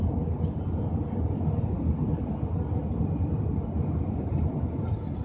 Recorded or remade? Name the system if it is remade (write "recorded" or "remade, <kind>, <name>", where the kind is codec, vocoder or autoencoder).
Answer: recorded